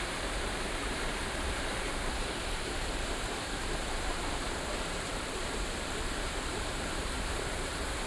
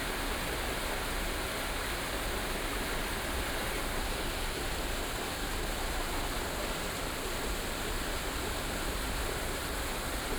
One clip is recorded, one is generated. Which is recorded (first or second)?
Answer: second